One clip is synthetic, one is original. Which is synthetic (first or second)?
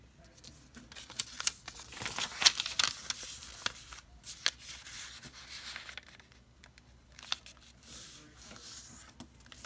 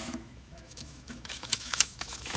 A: second